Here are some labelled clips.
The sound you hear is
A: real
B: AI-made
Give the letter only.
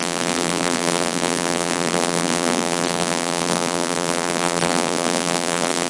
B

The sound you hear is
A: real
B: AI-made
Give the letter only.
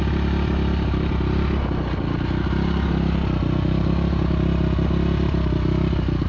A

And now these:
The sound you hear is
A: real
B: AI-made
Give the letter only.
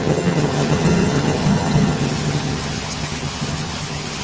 B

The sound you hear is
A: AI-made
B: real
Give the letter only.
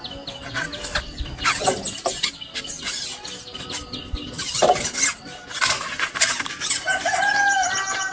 B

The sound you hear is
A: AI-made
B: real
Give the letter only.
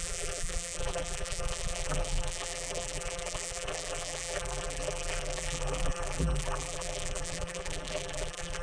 A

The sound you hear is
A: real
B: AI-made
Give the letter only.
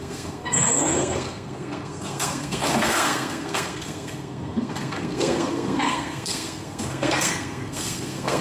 B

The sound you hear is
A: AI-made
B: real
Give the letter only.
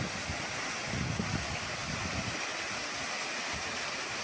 B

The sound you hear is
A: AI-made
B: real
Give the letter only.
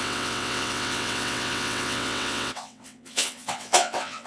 A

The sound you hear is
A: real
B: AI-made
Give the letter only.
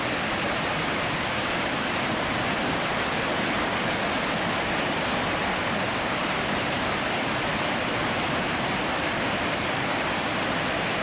A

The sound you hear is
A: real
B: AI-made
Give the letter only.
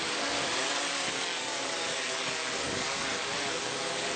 B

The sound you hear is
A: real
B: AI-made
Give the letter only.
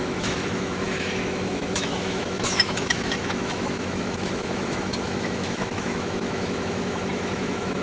B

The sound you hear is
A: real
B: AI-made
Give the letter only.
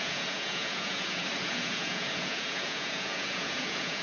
B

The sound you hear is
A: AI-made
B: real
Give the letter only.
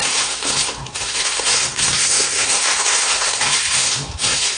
A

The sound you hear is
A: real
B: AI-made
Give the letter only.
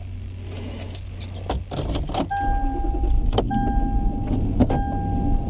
A